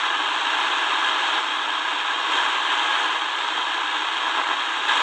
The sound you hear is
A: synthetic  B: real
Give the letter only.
B